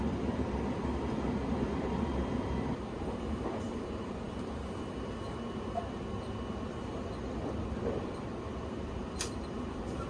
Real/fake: fake